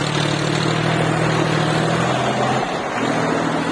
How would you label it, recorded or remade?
recorded